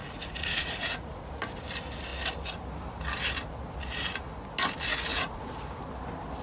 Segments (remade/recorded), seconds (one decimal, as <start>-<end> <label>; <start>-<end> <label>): 0.0-1.5 remade; 1.5-5.1 recorded; 5.1-5.8 remade; 5.8-6.4 recorded